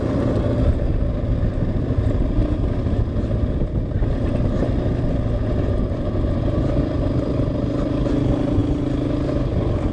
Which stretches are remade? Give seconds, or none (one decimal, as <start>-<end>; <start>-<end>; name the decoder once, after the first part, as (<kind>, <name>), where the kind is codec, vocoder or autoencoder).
0.0-2.4 (vocoder, BigVGAN v2); 6.8-8.6